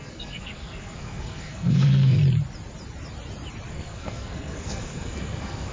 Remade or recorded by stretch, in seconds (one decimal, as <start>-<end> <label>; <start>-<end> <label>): 0.0-2.2 remade; 2.2-3.7 recorded; 3.7-5.7 remade